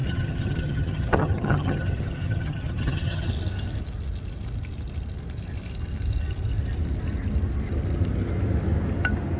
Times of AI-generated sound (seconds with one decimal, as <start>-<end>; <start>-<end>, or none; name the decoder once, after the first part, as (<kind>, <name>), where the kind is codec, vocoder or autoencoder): 0.0-3.3 (vocoder, HiFi-GAN)